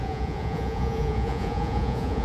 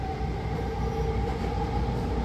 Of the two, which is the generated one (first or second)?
first